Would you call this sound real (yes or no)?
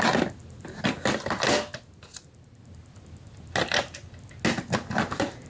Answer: yes